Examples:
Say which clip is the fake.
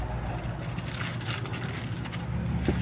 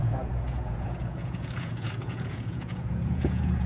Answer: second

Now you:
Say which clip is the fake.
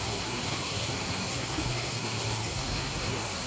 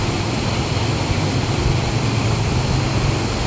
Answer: first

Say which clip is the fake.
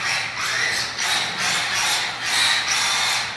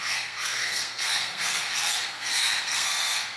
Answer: second